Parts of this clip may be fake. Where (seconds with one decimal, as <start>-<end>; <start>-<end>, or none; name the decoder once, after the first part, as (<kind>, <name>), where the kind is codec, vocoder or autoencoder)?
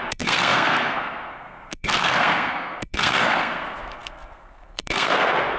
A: 0.0-5.6 (codec, SNAC)